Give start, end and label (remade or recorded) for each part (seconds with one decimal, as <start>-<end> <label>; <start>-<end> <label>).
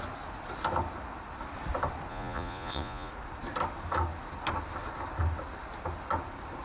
0.0-2.1 recorded; 2.1-3.1 remade; 3.1-6.6 recorded